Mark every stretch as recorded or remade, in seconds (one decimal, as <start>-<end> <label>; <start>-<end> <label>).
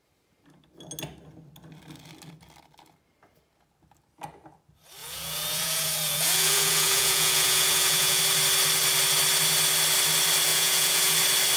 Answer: 0.0-5.0 recorded; 5.0-8.2 remade; 8.2-10.5 recorded; 10.5-11.1 remade; 11.1-11.6 recorded